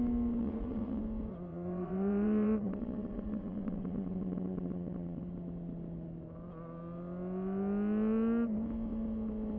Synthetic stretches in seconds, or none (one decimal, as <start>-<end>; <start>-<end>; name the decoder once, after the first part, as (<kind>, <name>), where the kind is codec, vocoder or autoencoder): 0.4-1.0 (vocoder, Vocos); 1.5-5.2